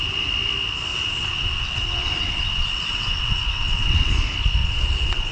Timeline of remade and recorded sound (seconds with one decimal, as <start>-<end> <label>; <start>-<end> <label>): 0.0-0.9 recorded; 0.9-4.1 remade; 4.1-4.6 recorded; 4.6-5.3 remade